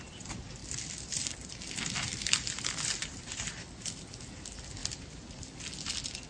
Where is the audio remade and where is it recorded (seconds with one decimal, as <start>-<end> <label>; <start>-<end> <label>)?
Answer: 0.0-0.6 recorded; 0.6-4.1 remade; 4.1-4.8 recorded; 4.8-5.6 remade; 5.6-6.3 recorded